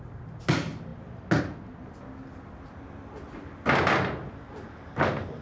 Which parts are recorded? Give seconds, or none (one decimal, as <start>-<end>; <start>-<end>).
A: 0.0-5.4